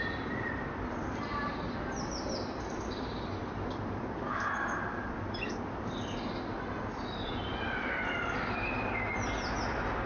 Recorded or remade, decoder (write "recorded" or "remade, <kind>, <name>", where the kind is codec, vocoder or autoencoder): remade, vocoder, BigVGAN v2